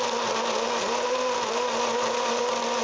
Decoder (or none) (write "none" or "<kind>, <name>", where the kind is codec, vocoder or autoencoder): none